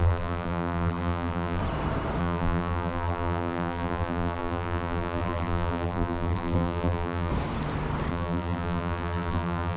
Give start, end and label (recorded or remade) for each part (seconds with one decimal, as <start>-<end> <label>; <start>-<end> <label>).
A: 0.0-1.6 remade; 1.6-2.2 recorded; 2.2-7.3 remade; 7.3-8.1 recorded; 8.1-9.8 remade